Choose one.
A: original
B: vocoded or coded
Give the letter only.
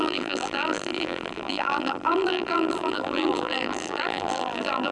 B